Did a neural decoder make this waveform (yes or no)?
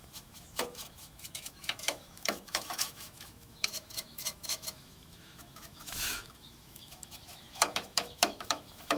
yes